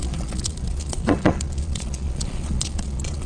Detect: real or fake fake